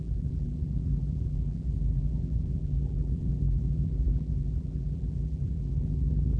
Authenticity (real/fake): fake